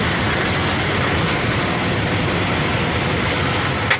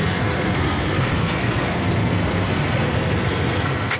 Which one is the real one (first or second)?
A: first